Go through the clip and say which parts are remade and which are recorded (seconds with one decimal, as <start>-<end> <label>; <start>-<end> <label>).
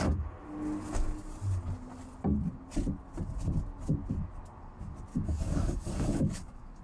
0.0-5.1 recorded; 5.1-6.8 remade